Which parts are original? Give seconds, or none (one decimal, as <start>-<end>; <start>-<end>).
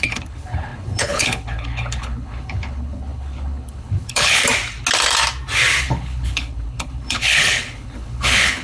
4.4-5.8